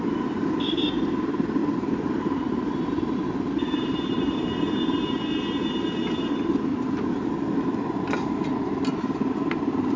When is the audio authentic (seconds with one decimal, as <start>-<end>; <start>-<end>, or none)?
0.0-1.6; 4.1-6.7; 7.3-10.0